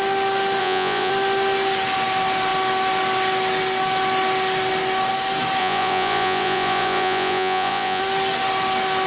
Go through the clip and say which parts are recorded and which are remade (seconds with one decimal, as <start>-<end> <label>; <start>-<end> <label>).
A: 0.0-0.6 recorded; 0.6-1.1 remade; 1.1-5.6 recorded; 5.6-8.0 remade; 8.0-9.1 recorded